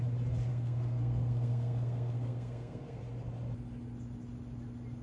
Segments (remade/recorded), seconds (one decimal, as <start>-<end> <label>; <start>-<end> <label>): 0.0-0.5 recorded; 0.5-3.0 remade; 3.0-5.0 recorded